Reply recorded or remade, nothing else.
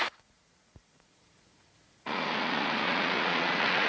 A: remade